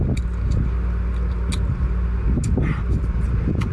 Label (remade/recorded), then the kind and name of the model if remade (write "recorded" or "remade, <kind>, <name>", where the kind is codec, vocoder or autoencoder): recorded